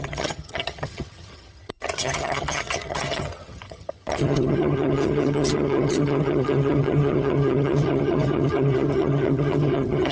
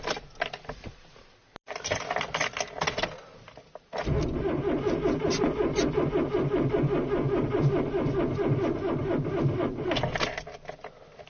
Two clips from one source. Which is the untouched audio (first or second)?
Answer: second